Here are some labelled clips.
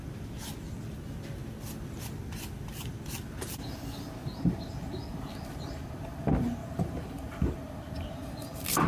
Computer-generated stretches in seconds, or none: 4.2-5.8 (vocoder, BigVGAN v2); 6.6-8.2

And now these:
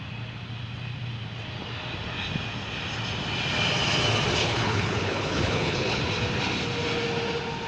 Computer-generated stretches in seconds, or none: 4.4-6.0 (codec, HILCodec)